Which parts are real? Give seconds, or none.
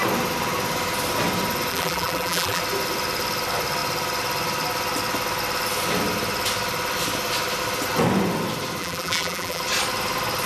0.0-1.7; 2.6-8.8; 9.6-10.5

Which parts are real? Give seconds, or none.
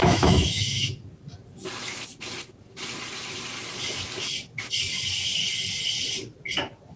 0.9-7.0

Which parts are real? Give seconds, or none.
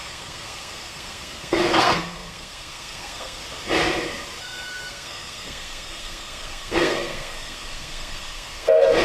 3.4-4.4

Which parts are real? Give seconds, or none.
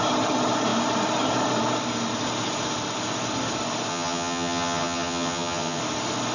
0.0-3.9; 5.8-6.3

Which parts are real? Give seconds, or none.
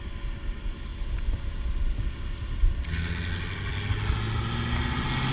0.0-5.3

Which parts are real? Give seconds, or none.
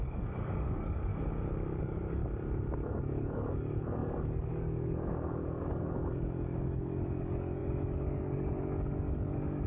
1.1-1.8; 2.2-3.0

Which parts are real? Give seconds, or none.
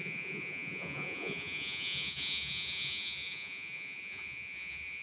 none